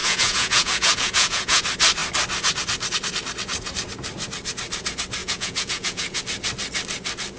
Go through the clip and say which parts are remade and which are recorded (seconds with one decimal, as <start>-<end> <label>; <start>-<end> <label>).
0.0-1.6 remade; 1.6-5.2 recorded; 5.2-6.2 remade; 6.2-7.4 recorded